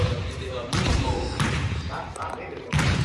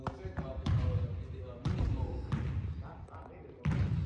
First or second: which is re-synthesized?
first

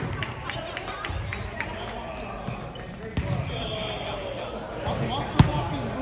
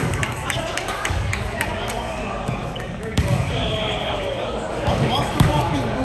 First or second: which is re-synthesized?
second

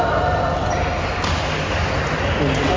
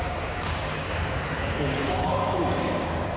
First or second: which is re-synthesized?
second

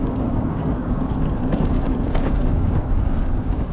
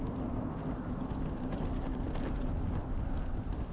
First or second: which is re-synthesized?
first